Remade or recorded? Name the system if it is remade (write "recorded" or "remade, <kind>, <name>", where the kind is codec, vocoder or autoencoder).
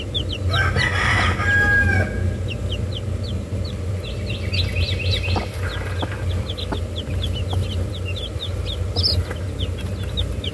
recorded